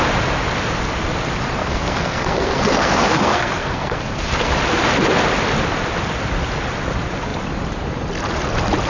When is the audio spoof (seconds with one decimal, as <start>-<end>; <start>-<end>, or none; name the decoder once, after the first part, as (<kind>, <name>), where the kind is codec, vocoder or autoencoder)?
1.6-4.5 (codec, SNAC)